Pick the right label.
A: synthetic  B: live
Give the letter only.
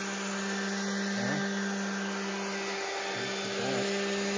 B